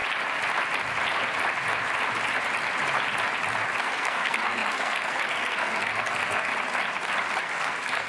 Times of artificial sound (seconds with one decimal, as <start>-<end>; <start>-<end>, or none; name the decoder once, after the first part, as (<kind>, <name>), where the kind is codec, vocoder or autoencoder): 3.8-6.5 (codec, SNAC); 7.4-8.1

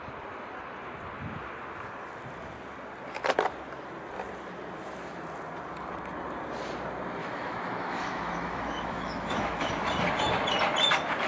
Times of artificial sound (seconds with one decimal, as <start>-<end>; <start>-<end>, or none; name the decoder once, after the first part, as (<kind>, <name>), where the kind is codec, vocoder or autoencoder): 7.2-9.7 (autoencoder, DAC-VAE)

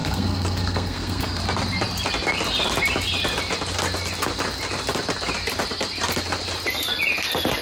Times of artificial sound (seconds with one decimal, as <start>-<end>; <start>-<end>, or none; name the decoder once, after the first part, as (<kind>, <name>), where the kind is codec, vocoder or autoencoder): 0.0-1.4 (codec, SNAC)

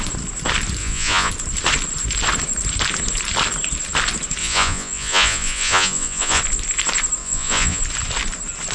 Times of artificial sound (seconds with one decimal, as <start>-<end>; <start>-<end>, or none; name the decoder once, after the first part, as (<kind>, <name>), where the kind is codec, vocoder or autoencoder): 0.8-1.3 (vocoder, Vocos); 4.4-6.4; 7.2-7.8

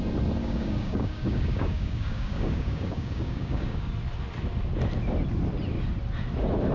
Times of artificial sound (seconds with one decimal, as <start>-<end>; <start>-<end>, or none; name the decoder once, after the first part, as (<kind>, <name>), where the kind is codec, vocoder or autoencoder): 0.4-3.9 (codec, DAC)